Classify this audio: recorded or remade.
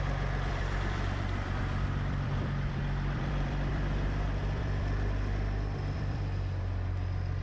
remade